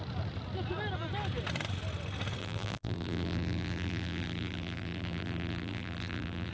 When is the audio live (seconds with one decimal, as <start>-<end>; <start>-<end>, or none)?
0.0-2.4